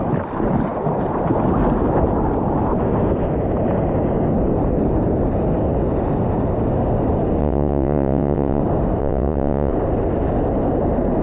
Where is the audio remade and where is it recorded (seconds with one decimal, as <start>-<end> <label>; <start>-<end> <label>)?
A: 0.0-7.4 recorded; 7.4-8.6 remade; 8.6-9.0 recorded; 9.0-9.7 remade; 9.7-11.2 recorded